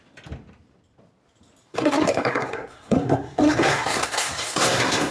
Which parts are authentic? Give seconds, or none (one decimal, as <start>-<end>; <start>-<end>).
0.0-1.7